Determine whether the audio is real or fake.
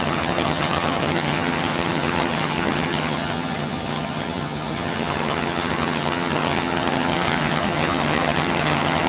fake